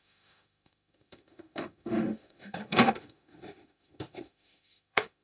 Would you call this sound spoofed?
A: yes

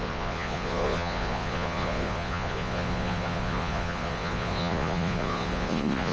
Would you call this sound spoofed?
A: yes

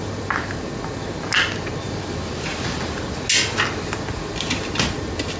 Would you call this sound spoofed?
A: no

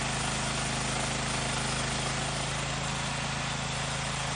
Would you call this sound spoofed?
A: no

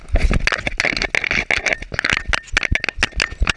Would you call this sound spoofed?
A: no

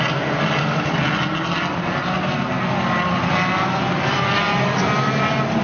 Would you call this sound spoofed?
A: no